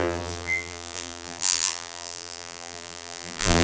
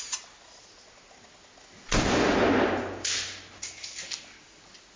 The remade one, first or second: first